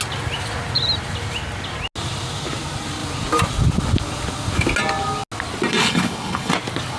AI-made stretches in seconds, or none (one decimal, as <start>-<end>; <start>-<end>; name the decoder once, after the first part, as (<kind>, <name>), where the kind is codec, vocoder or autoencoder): 5.8-6.5 (codec, HILCodec)